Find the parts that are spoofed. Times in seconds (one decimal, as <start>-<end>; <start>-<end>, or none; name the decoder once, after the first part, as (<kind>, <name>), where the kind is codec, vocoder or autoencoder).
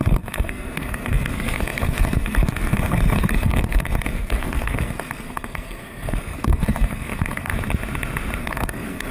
0.0-7.5 (codec, SNAC); 8.4-9.1